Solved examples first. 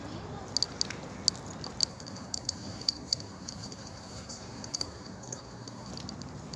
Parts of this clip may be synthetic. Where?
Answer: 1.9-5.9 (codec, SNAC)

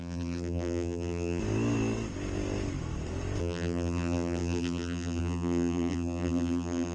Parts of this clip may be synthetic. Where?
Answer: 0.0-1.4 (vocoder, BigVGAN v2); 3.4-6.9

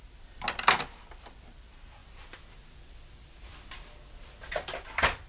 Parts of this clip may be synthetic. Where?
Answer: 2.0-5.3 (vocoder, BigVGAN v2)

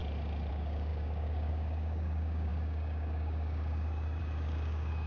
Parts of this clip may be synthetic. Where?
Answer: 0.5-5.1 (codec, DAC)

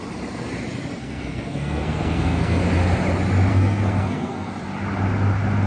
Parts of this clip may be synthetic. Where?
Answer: 1.0-2.6 (codec, SNAC); 3.5-4.5

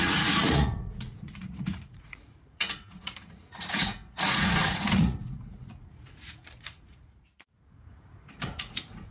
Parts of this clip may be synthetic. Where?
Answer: 0.0-9.1 (vocoder, Vocos)

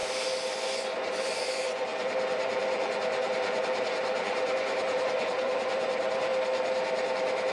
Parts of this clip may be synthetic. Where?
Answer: 0.5-6.3 (vocoder, Vocos)

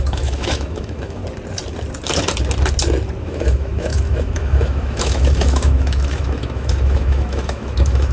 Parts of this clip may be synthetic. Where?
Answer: 0.0-1.2 (autoencoder, DAC-VAE); 3.2-8.1